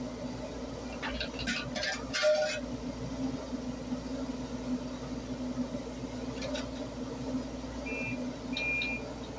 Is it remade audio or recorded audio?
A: recorded